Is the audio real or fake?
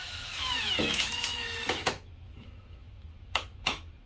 fake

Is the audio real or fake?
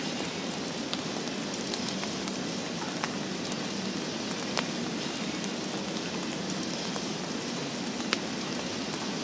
real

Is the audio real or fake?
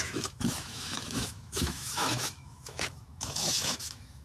fake